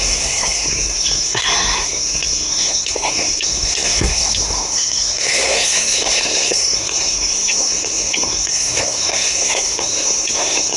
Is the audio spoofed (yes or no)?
yes